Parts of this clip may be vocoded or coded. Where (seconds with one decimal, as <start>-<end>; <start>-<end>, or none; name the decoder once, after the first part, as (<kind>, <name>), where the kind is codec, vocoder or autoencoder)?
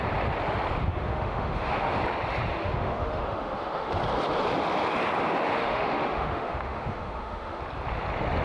0.9-1.9 (autoencoder, DAC-VAE); 2.5-3.9; 5.6-7.6